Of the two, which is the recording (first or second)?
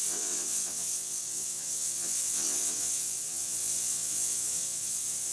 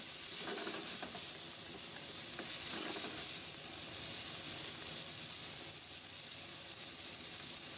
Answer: second